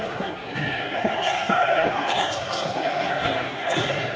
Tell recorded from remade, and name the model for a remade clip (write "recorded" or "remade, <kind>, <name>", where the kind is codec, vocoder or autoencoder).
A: remade, codec, SNAC